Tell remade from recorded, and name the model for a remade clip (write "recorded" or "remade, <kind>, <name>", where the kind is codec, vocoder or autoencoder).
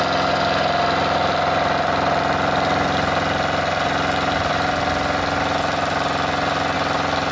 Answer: recorded